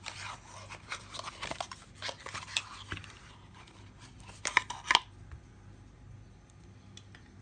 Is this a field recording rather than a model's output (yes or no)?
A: yes